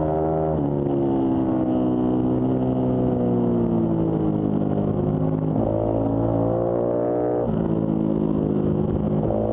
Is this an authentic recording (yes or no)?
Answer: yes